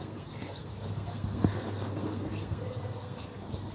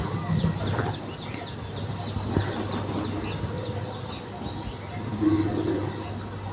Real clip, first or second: second